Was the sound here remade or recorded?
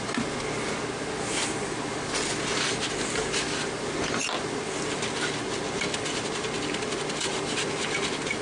recorded